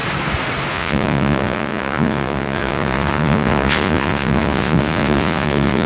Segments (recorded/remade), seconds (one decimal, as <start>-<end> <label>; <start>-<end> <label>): 0.0-0.7 recorded; 0.7-5.9 remade